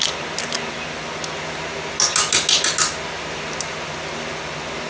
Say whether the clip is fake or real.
real